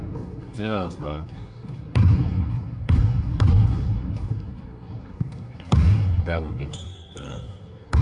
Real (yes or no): no